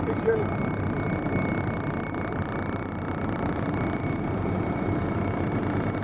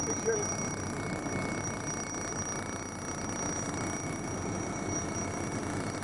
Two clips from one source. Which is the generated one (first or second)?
first